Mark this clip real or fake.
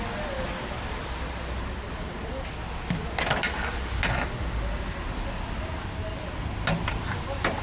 real